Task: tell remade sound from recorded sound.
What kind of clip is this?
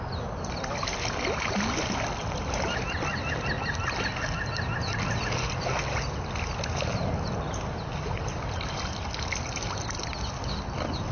recorded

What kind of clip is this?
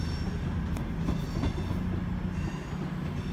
recorded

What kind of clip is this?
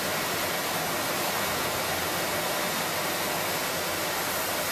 recorded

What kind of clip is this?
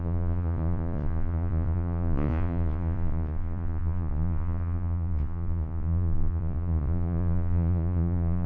remade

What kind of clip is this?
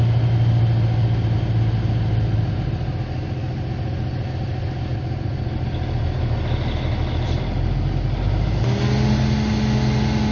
recorded